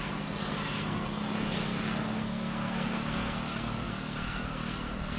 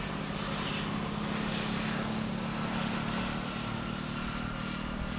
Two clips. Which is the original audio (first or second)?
second